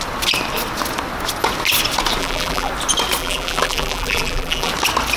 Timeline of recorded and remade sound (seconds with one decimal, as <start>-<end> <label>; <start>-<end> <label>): 0.0-2.2 recorded; 2.2-2.7 remade; 2.7-3.2 recorded; 3.2-4.7 remade; 4.7-5.2 recorded